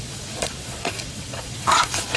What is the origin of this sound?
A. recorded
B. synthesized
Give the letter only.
B